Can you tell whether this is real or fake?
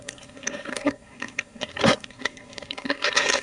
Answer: fake